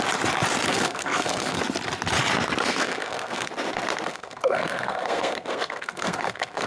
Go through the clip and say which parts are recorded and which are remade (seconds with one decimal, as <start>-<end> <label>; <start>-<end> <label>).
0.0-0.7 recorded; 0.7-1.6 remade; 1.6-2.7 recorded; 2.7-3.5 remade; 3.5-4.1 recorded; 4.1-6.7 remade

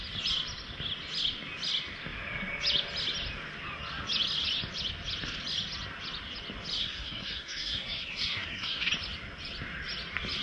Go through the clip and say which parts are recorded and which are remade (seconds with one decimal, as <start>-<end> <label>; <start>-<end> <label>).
0.0-6.8 recorded; 6.8-8.9 remade; 8.9-10.4 recorded

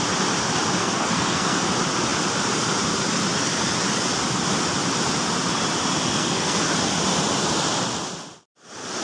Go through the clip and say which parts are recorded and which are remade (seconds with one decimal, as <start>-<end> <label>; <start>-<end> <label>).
0.0-0.8 recorded; 0.8-1.7 remade; 1.7-6.0 recorded; 6.0-6.6 remade; 6.6-9.0 recorded